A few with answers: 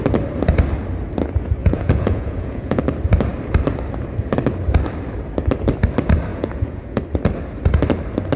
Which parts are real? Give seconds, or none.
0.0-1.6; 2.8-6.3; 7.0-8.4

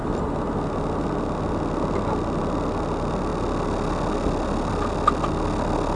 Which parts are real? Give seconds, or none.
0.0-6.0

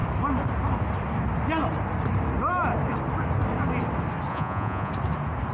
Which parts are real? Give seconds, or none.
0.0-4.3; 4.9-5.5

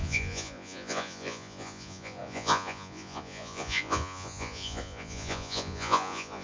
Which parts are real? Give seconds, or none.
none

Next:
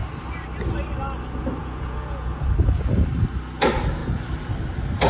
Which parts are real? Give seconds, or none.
0.0-1.6; 2.5-5.1

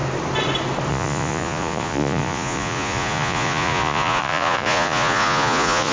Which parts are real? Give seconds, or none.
0.0-0.9

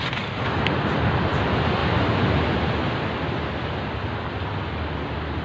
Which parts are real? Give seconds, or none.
0.0-5.4

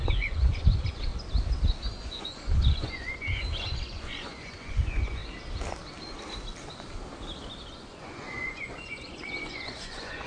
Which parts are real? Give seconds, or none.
1.1-1.9; 5.2-7.7